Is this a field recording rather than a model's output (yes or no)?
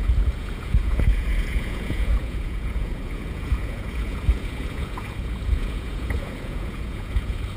no